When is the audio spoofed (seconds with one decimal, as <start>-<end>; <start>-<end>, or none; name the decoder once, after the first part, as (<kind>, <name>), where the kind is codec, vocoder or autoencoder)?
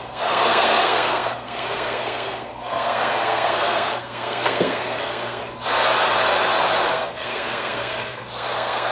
0.0-5.4 (codec, SNAC); 6.9-8.9